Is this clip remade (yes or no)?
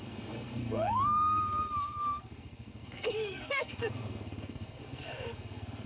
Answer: yes